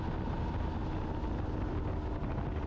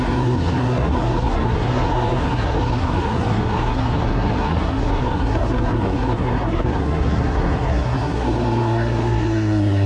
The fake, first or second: second